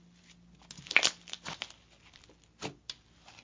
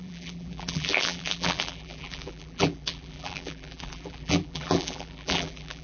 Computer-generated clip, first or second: second